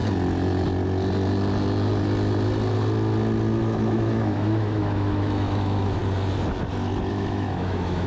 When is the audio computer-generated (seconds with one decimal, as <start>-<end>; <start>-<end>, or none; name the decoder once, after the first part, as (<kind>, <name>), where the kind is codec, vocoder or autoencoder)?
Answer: 3.6-6.0 (autoencoder, DAC-VAE); 7.1-8.1